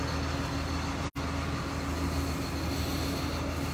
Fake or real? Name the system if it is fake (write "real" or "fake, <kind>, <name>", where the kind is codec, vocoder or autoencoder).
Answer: real